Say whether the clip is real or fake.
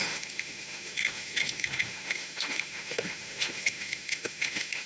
fake